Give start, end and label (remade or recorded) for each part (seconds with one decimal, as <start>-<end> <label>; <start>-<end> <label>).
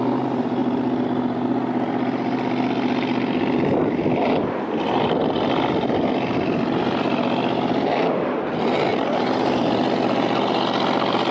0.0-8.9 recorded; 8.9-9.6 remade; 9.6-11.3 recorded